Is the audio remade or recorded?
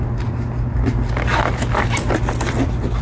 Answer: recorded